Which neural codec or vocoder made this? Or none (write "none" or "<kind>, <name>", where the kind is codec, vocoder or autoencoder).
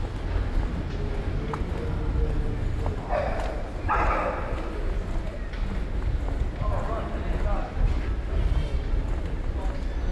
none